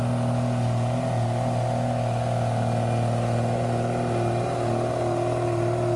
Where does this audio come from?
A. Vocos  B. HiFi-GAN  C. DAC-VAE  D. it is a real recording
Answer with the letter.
D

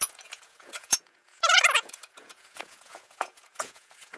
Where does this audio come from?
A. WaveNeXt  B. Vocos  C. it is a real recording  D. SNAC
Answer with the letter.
B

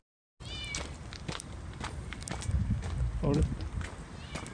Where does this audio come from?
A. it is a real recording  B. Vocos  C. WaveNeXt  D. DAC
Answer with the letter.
A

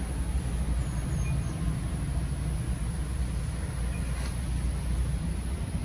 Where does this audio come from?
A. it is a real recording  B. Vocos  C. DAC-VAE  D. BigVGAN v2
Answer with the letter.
A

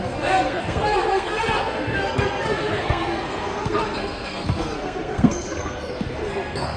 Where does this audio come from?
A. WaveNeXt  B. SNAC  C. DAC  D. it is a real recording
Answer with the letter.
B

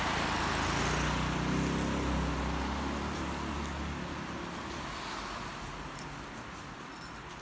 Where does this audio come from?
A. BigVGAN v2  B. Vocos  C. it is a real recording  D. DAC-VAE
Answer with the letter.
C